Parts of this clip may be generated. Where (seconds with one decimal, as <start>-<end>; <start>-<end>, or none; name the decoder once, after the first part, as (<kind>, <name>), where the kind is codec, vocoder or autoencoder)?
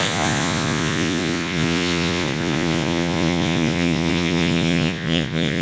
0.0-5.6 (vocoder, Vocos)